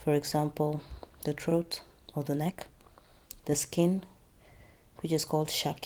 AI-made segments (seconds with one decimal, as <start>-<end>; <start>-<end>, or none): 3.1-4.7